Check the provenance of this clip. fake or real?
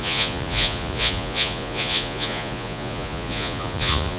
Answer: fake